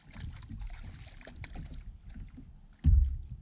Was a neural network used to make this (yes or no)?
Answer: no